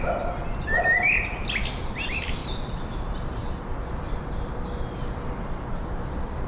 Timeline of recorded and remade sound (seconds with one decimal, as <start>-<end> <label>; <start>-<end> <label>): 0.0-6.5 recorded